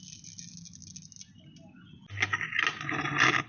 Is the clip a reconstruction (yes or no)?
no